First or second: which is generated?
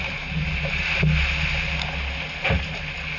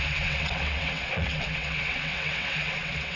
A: second